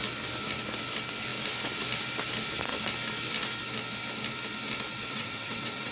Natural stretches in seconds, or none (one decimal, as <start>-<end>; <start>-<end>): 0.0-4.9